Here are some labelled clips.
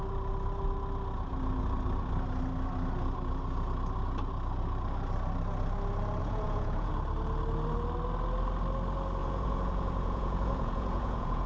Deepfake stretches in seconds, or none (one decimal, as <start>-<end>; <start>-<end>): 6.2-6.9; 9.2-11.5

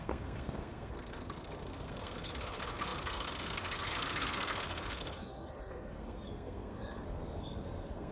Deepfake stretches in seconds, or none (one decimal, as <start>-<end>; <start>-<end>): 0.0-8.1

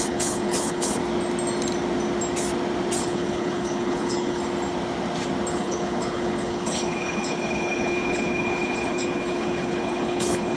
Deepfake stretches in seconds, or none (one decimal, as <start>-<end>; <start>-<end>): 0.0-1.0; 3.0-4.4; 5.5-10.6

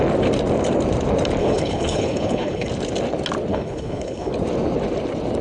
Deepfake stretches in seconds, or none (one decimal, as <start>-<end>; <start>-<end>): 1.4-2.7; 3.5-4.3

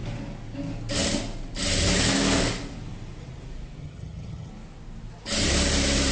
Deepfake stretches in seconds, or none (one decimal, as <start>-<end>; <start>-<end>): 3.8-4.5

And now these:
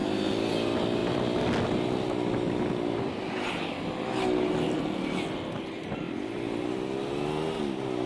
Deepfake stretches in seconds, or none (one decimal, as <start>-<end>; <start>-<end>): none

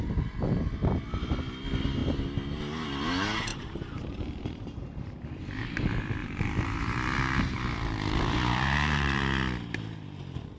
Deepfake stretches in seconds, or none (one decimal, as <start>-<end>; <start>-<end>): 3.5-5.6; 6.2-9.2

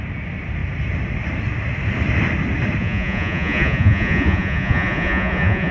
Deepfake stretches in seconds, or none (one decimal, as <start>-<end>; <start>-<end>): 2.8-5.7